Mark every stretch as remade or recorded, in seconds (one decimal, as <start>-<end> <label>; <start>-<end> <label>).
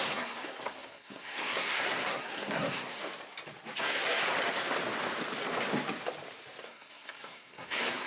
0.0-3.0 remade; 3.0-3.8 recorded; 3.8-4.2 remade; 4.2-6.6 recorded; 6.6-8.1 remade